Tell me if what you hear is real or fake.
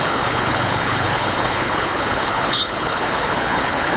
fake